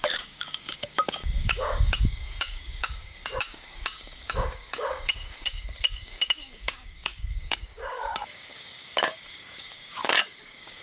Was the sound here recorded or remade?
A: remade